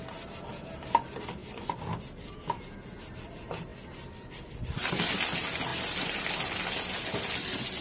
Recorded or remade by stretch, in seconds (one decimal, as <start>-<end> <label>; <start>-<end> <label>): 0.0-5.7 recorded; 5.7-6.6 remade; 6.6-7.8 recorded